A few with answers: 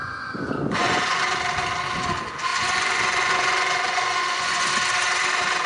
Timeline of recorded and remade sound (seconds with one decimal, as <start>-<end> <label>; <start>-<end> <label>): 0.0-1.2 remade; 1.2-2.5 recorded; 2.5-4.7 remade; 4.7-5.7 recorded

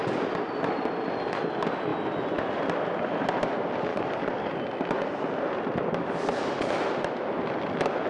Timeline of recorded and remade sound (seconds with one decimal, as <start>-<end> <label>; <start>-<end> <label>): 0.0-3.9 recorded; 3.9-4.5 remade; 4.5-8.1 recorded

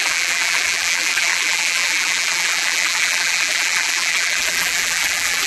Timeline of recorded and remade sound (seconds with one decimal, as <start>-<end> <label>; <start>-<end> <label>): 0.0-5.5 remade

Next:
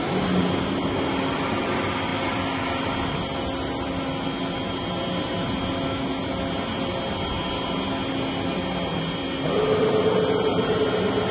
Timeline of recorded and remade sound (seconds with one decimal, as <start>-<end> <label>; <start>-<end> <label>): 0.0-11.3 recorded